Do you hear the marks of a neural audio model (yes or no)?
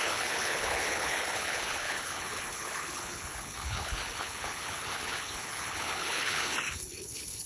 yes